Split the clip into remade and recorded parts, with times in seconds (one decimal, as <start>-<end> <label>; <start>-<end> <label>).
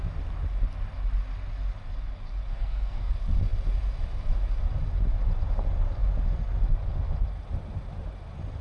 0.0-2.5 recorded; 2.5-3.1 remade; 3.1-8.6 recorded